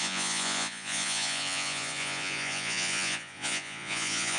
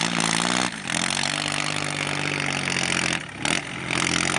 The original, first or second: second